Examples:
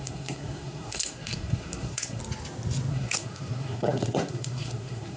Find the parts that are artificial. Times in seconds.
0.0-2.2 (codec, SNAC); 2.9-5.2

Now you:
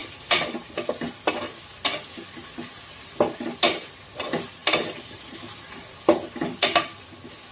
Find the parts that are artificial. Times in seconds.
0.0-0.7 (vocoder, BigVGAN v2); 4.6-7.1

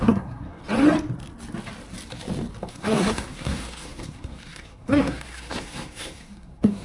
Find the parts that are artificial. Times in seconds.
0.0-0.6 (codec, SNAC); 2.7-6.8

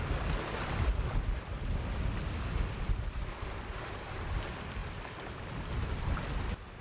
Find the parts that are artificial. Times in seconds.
none

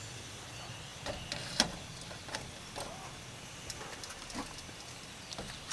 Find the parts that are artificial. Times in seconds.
none